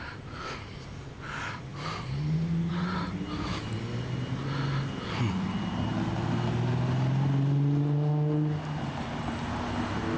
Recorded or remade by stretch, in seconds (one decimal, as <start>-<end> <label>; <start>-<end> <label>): 0.0-10.2 recorded